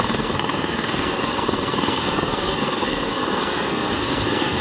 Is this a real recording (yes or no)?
no